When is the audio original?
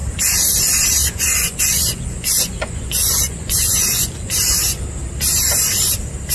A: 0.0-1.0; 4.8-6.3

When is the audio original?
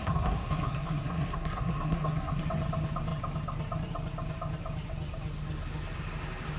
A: 2.4-6.6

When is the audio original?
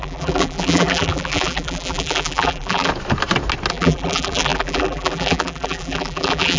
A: 2.9-3.7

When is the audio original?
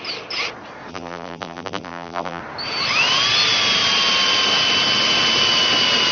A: 0.0-0.9; 2.4-6.1